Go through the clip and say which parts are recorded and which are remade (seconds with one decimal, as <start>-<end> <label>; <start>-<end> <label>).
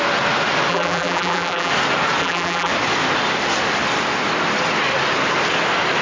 0.0-0.7 recorded; 0.7-1.7 remade; 1.7-2.2 recorded; 2.2-2.7 remade; 2.7-6.0 recorded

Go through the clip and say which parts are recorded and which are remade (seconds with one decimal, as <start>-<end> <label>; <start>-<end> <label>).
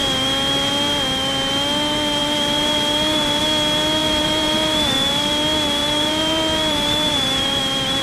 0.0-2.2 recorded; 2.2-3.4 remade; 3.4-4.0 recorded; 4.0-5.3 remade; 5.3-5.8 recorded; 5.8-7.6 remade; 7.6-8.0 recorded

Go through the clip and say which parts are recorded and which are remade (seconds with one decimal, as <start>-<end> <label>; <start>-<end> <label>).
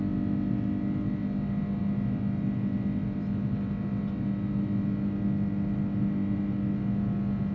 0.0-7.5 recorded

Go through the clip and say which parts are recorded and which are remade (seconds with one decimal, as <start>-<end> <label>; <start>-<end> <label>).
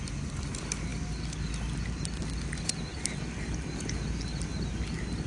0.0-5.3 recorded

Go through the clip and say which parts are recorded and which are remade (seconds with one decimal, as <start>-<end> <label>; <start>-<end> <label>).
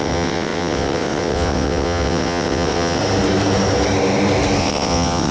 0.0-3.0 remade; 3.0-4.6 recorded; 4.6-5.3 remade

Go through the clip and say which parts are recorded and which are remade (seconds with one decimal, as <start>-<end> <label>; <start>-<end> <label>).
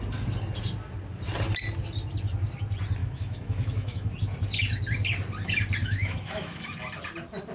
0.0-3.0 recorded; 3.0-4.1 remade; 4.1-5.8 recorded; 5.8-6.7 remade; 6.7-7.5 recorded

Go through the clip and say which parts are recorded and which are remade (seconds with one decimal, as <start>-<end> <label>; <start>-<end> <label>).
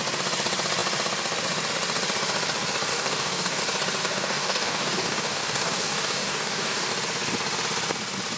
0.0-2.9 recorded; 2.9-3.6 remade; 3.6-4.0 recorded; 4.0-6.9 remade; 6.9-8.4 recorded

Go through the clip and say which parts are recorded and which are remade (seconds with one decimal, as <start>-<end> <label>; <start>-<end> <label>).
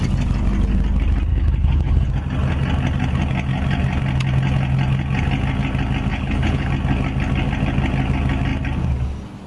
0.0-1.3 recorded; 1.3-2.1 remade; 2.1-6.1 recorded; 6.1-6.7 remade; 6.7-9.5 recorded